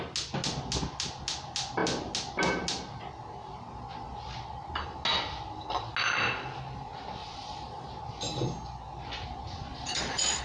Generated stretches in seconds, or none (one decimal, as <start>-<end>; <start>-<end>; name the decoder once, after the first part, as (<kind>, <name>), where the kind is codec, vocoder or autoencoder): 7.2-7.9 (vocoder, Vocos); 9.7-10.4